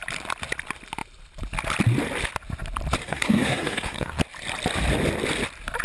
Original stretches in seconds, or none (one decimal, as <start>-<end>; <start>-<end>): 0.0-3.0; 4.2-5.8

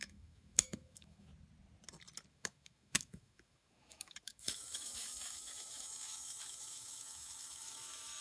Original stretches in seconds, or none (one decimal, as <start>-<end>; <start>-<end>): 1.3-2.3

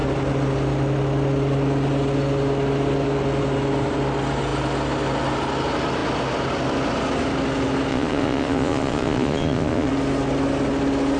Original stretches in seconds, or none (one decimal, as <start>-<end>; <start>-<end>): 0.0-7.9; 9.9-11.2

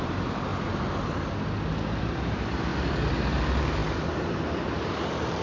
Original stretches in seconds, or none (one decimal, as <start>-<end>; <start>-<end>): 0.5-2.0; 2.7-3.4

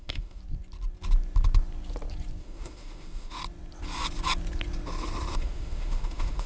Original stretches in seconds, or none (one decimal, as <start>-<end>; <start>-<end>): 0.4-2.4; 3.4-5.3

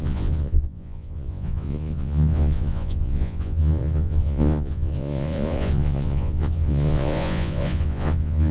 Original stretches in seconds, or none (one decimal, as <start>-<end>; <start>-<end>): none

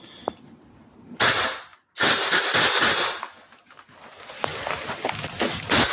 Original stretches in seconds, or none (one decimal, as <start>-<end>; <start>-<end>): 0.0-5.9